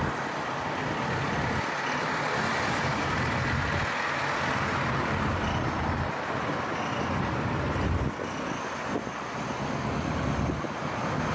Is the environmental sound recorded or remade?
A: recorded